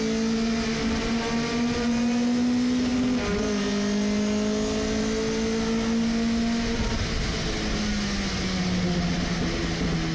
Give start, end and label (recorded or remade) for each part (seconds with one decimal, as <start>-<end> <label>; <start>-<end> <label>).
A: 0.0-10.1 recorded